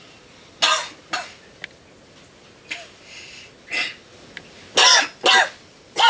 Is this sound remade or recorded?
recorded